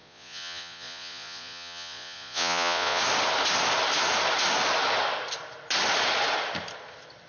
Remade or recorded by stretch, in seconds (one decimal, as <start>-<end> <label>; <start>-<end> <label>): 0.0-3.0 remade; 3.0-7.3 recorded